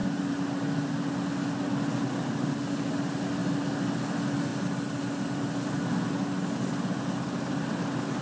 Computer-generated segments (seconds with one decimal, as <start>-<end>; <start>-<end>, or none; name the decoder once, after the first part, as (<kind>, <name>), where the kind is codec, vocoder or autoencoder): none